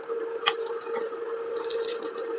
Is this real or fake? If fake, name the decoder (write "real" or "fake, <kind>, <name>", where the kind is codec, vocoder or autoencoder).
real